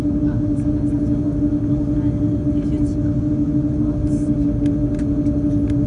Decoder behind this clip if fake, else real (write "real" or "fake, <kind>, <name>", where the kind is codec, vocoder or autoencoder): real